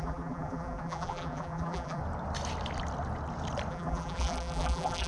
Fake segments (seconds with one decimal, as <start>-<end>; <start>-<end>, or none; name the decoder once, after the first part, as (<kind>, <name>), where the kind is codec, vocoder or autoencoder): 0.0-2.0 (vocoder, BigVGAN v2); 3.7-5.1